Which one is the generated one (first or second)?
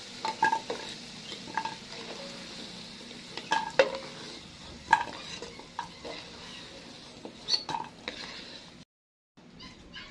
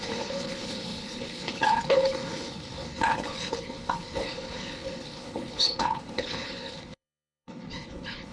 second